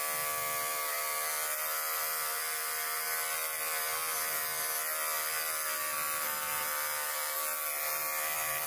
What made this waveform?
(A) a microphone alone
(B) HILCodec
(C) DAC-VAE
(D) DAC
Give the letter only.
A